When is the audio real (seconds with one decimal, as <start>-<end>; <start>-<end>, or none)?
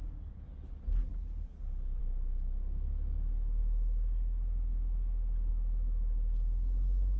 0.0-7.2